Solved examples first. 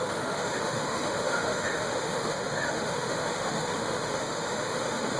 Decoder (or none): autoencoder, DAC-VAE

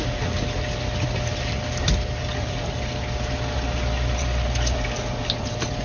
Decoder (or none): none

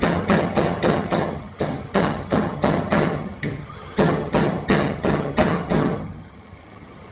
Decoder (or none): vocoder, HiFi-GAN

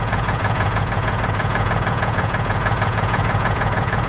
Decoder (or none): vocoder, Vocos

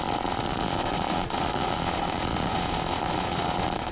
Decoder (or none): vocoder, Vocos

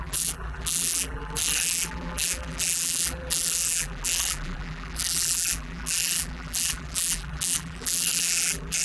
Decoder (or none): vocoder, BigVGAN v2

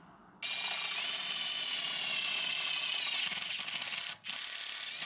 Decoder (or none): none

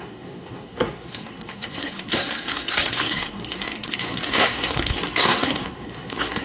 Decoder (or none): codec, SNAC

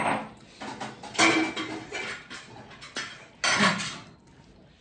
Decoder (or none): none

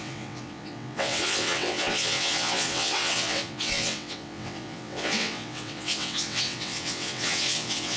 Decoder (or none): vocoder, WaveNeXt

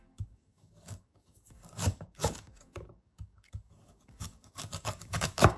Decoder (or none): codec, DAC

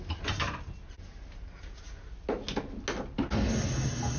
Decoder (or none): none